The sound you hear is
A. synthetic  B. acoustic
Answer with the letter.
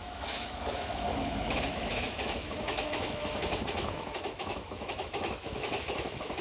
A